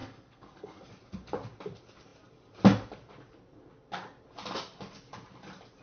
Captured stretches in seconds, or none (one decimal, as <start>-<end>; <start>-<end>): 0.9-5.8